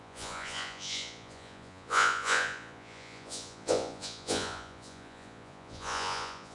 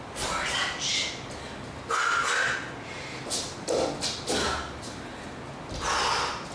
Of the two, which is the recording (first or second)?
second